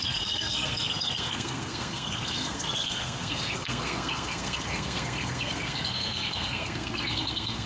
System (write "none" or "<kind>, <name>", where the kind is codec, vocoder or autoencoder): codec, SNAC